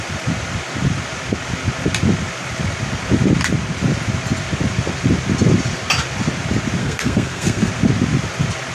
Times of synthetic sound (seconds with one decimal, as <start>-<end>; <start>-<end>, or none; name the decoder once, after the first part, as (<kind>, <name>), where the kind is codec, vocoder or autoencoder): 6.8-7.7 (codec, SNAC)